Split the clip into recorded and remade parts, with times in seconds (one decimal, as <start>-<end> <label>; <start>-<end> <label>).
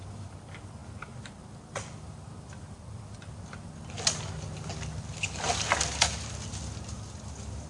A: 0.0-7.7 recorded